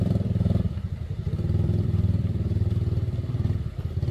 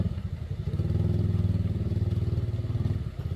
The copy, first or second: first